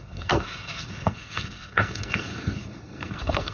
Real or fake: fake